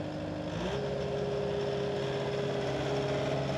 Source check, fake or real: real